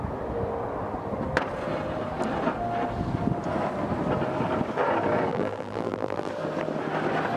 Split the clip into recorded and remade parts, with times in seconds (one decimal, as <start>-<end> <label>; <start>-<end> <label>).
0.0-5.3 recorded; 5.3-6.3 remade; 6.3-7.4 recorded